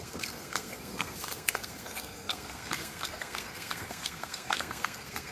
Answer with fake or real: fake